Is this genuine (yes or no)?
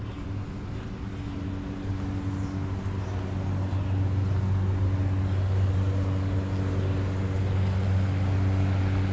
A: yes